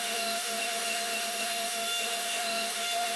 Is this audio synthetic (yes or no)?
yes